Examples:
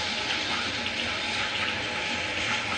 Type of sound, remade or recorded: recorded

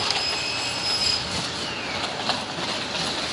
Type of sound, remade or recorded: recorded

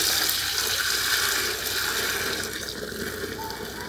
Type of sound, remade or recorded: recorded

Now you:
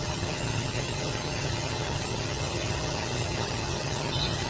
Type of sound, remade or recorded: remade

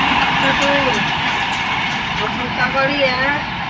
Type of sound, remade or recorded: recorded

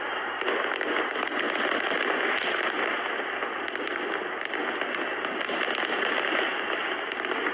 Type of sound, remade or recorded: recorded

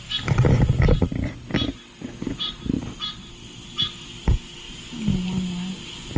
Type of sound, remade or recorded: recorded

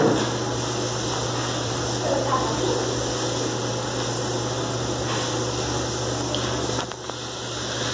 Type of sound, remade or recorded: recorded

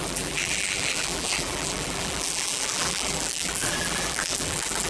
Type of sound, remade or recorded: remade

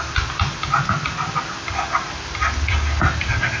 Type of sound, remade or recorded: recorded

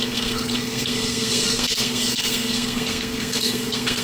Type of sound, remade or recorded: remade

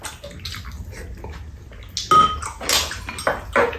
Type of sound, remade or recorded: recorded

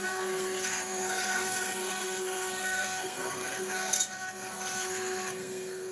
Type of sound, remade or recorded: remade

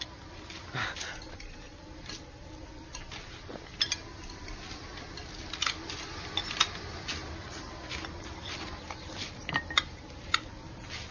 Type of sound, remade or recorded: recorded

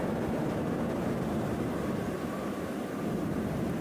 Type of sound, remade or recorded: remade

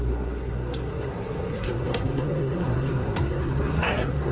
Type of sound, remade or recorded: remade